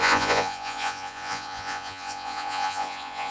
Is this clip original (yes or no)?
no